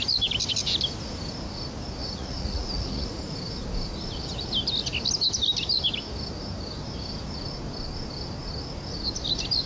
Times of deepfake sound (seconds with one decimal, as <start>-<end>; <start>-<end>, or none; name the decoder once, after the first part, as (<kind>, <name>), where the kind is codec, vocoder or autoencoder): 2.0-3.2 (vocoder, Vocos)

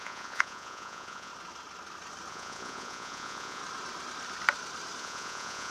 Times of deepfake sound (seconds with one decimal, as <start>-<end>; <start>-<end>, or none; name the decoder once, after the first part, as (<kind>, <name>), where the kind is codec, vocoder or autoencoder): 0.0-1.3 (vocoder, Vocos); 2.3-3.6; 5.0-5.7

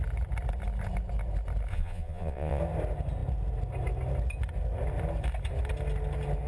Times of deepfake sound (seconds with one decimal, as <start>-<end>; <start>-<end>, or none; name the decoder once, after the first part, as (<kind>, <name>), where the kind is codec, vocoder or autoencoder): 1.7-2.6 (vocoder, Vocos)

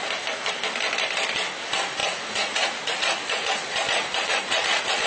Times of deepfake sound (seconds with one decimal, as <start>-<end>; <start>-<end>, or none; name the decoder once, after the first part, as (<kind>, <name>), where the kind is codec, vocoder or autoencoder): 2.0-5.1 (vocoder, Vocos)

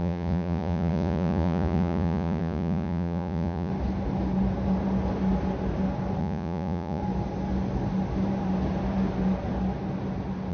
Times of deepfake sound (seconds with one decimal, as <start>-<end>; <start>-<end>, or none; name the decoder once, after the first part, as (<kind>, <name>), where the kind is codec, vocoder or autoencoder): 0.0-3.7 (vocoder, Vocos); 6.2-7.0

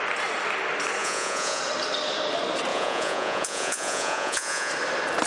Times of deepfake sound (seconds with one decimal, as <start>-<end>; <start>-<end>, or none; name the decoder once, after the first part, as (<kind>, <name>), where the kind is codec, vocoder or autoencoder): 1.0-1.6 (vocoder, Vocos); 2.7-4.7

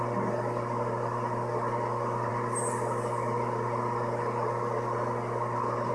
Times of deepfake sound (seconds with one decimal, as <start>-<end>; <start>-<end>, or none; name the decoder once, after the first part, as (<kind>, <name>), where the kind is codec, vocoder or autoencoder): none